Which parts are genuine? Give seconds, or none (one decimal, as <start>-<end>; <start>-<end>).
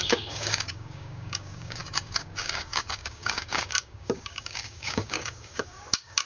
none